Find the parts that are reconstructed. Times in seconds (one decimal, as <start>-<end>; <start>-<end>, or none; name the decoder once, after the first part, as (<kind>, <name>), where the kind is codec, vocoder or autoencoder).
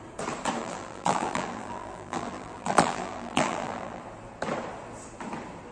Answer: 0.6-4.0 (vocoder, BigVGAN v2)